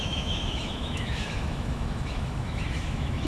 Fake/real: fake